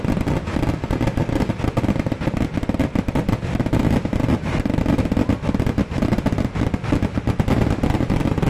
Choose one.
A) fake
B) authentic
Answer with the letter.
B